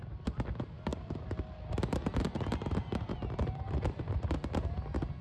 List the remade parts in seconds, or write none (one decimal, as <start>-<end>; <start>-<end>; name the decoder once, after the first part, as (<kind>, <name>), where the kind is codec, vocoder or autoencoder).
none